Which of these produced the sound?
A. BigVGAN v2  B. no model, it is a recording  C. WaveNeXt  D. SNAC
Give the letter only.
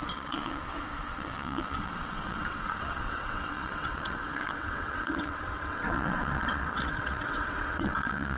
C